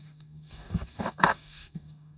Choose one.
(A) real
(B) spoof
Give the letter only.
B